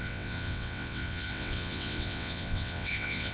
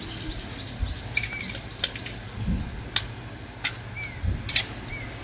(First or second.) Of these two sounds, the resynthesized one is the first